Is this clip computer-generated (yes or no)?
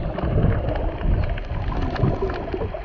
no